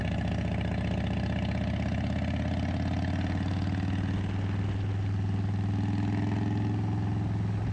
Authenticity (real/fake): real